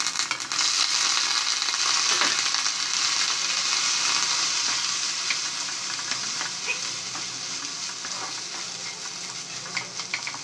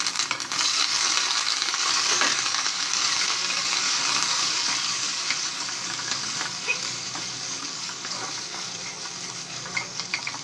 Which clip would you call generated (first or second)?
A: second